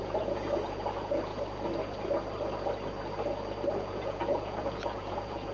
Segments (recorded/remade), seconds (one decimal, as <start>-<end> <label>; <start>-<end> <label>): 0.0-1.3 remade; 1.3-3.7 recorded; 3.7-5.5 remade